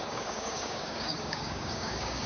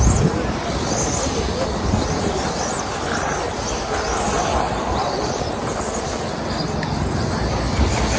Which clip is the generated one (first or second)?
first